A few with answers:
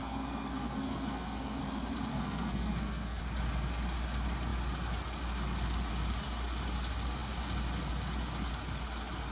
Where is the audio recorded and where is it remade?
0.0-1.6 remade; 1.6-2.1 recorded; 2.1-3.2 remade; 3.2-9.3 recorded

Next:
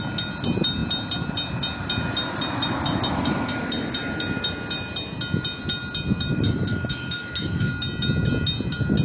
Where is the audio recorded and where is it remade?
0.0-6.3 recorded; 6.3-7.7 remade; 7.7-9.0 recorded

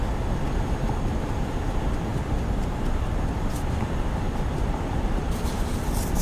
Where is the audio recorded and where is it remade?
0.0-6.2 recorded

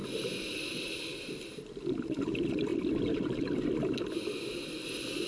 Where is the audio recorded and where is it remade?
0.0-5.3 recorded

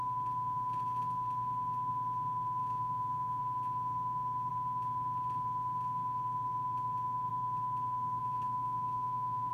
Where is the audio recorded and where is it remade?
0.0-2.6 recorded; 2.6-3.4 remade; 3.4-8.2 recorded; 8.2-9.5 remade